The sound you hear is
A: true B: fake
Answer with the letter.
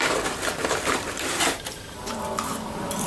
B